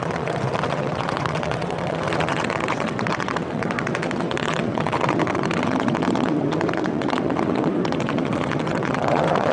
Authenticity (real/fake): fake